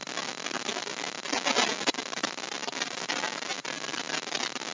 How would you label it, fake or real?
real